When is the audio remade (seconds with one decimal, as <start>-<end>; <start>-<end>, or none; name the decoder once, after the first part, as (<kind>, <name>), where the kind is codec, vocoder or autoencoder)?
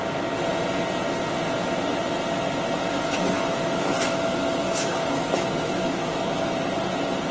2.8-6.5 (autoencoder, DAC-VAE)